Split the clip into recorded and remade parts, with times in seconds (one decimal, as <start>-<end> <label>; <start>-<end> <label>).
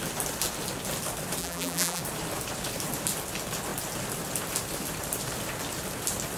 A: 0.0-1.4 recorded; 1.4-2.0 remade; 2.0-6.4 recorded